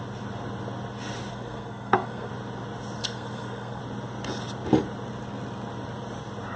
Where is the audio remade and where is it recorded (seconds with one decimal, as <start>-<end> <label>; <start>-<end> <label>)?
0.0-1.3 recorded; 1.3-2.3 remade; 2.3-3.0 recorded; 3.0-3.8 remade; 3.8-6.6 recorded